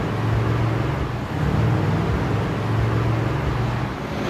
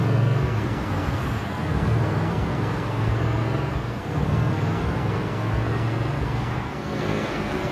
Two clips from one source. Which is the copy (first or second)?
second